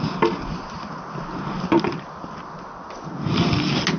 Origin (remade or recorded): recorded